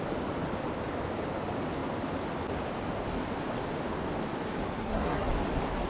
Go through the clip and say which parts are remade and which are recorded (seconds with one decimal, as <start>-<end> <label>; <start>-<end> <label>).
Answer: 0.0-4.7 recorded; 4.7-5.3 remade; 5.3-5.9 recorded